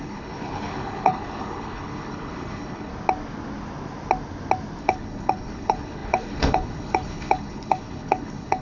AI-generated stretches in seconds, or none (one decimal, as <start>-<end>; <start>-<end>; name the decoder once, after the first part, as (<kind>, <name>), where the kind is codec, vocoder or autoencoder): 0.0-2.9 (codec, HILCodec); 4.8-8.6